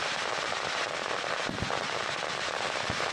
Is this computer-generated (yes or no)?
yes